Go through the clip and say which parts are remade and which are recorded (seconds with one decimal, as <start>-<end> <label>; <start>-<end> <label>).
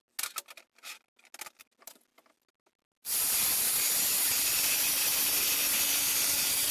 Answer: 0.0-6.7 recorded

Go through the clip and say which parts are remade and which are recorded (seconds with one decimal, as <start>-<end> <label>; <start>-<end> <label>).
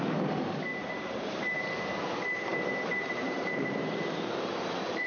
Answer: 0.0-0.7 recorded; 0.7-1.7 remade; 1.7-2.5 recorded; 2.5-5.1 remade